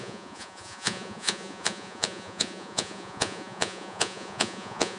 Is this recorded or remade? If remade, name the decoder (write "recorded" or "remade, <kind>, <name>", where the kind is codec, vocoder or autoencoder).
remade, vocoder, Vocos